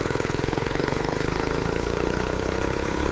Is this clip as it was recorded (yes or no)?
no